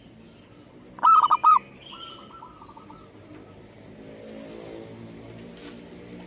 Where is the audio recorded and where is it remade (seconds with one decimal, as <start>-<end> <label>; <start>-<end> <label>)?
0.0-1.4 recorded; 1.4-3.7 remade; 3.7-6.3 recorded